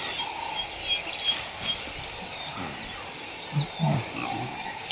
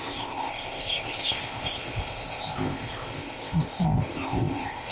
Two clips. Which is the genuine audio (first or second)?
first